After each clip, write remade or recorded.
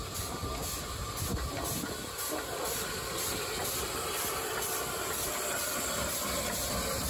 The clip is recorded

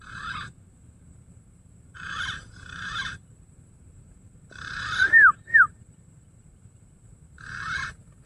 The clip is remade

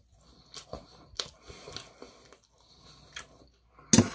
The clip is recorded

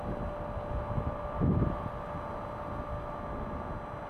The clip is recorded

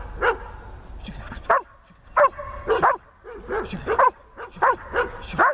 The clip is recorded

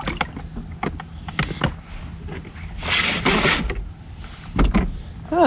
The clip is recorded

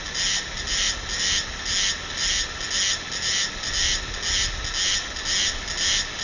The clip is recorded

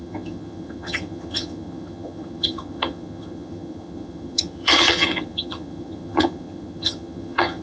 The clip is remade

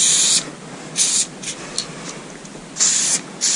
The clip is recorded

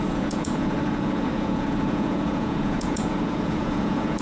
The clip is remade